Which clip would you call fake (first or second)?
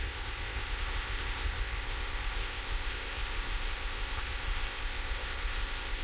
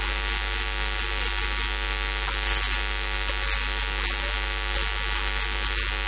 first